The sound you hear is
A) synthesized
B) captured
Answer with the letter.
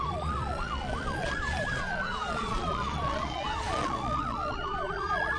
A